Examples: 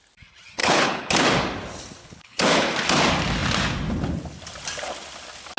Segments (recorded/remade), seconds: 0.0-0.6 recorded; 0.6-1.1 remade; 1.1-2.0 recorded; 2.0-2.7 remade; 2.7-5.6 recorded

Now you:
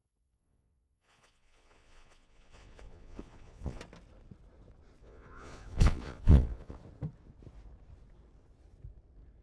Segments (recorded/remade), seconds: 0.0-3.8 remade; 3.8-5.0 recorded; 5.0-6.8 remade; 6.8-9.4 recorded